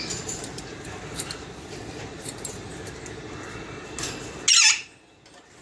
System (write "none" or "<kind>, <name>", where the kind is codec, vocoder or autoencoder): none